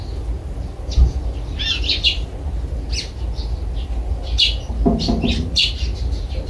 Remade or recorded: recorded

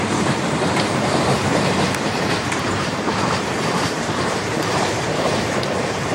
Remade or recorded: remade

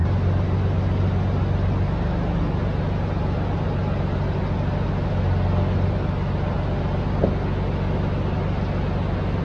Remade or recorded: recorded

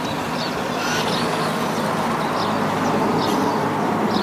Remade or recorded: recorded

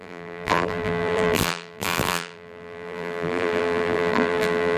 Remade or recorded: remade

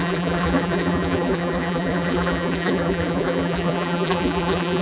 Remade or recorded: remade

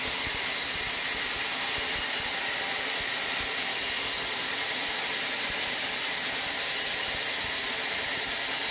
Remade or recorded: recorded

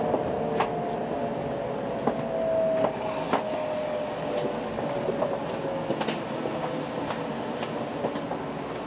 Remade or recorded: recorded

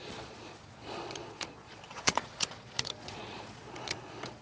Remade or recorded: remade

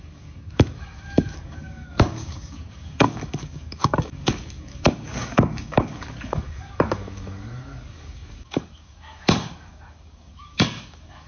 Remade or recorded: remade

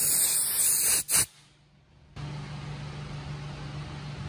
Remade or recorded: recorded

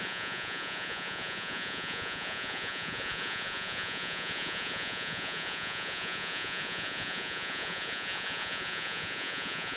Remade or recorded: remade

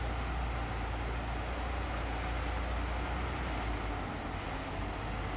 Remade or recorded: recorded